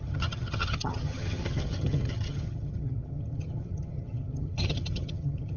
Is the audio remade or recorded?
remade